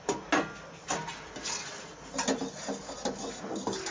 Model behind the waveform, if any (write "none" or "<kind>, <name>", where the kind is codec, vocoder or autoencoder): none